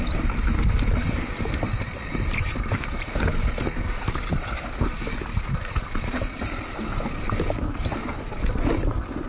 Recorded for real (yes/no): no